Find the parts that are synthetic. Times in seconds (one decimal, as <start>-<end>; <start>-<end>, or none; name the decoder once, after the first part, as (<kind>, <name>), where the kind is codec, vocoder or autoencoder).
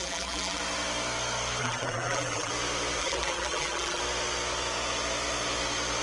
0.0-0.6 (vocoder, BigVGAN v2); 1.6-2.5; 3.0-4.0